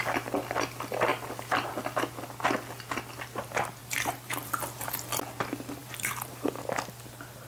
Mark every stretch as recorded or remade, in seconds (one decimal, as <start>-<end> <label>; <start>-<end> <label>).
0.0-3.8 recorded; 3.8-4.9 remade; 4.9-5.8 recorded; 5.8-6.5 remade; 6.5-7.5 recorded